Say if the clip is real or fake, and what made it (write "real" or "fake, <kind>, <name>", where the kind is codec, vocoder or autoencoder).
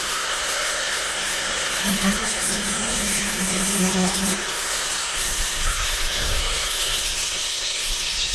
fake, codec, SNAC